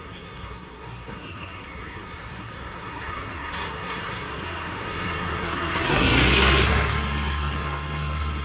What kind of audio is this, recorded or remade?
remade